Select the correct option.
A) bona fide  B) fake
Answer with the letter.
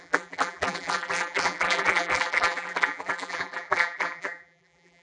B